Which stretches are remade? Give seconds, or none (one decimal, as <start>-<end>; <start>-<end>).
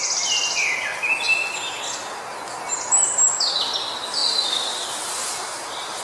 none